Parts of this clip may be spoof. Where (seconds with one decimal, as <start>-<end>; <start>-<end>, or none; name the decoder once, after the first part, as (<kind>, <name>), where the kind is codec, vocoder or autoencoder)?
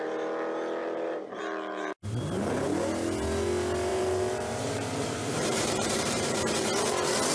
0.8-1.4 (vocoder, BigVGAN v2); 3.9-6.5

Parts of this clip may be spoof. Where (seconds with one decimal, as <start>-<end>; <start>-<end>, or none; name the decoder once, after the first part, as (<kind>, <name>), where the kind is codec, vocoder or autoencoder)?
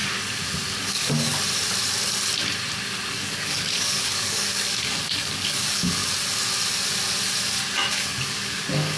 0.8-1.3 (codec, DAC); 3.1-6.0; 7.9-9.0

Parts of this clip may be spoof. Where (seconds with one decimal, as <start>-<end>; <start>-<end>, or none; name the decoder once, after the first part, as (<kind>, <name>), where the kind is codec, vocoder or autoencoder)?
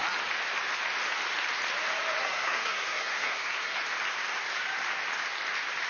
2.2-3.8 (codec, SNAC)